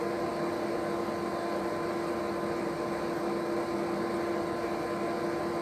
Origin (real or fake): real